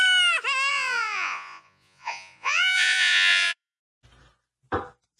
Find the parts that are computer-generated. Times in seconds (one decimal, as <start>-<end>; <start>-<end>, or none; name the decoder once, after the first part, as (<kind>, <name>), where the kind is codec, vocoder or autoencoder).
0.7-3.8 (vocoder, Vocos)